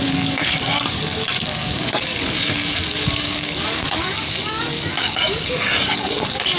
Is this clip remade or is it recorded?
remade